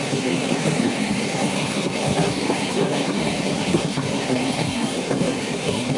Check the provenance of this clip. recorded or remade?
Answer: remade